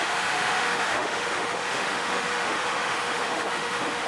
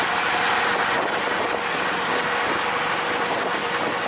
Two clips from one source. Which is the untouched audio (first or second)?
second